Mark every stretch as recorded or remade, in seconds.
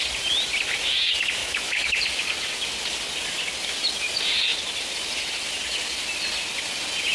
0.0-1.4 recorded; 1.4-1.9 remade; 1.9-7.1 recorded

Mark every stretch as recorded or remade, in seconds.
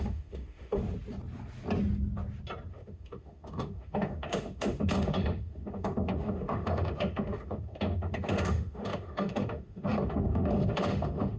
0.0-0.8 remade; 0.8-2.7 recorded; 2.7-11.4 remade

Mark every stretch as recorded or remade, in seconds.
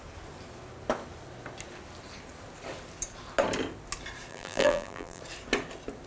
0.0-4.3 recorded; 4.3-5.2 remade; 5.2-6.1 recorded